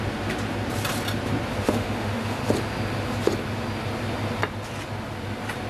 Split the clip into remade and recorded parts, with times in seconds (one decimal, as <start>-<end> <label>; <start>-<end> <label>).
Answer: 0.0-1.6 recorded; 1.6-2.4 remade; 2.4-5.7 recorded